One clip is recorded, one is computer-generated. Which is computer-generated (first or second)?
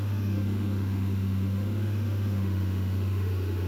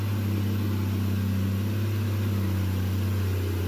first